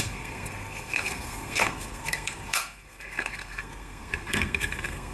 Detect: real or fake fake